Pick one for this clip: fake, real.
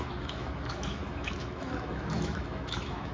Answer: fake